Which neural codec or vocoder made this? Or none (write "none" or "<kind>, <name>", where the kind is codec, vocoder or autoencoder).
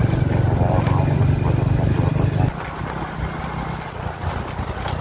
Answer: none